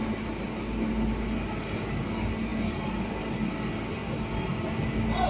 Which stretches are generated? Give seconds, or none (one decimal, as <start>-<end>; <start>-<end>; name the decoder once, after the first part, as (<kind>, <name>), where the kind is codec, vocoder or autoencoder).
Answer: 2.5-3.2 (vocoder, BigVGAN v2)